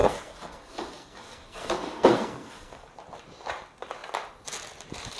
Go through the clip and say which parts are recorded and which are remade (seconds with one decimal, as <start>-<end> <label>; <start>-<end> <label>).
0.0-2.9 remade; 2.9-5.2 recorded